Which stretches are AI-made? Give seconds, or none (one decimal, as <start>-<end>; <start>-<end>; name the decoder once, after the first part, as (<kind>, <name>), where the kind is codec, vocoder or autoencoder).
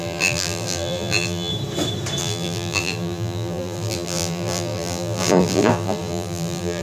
0.0-1.5 (vocoder, BigVGAN v2); 2.2-6.8